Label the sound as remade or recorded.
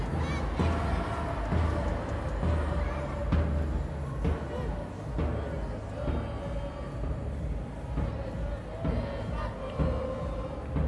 recorded